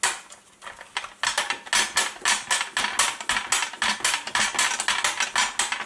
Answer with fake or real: real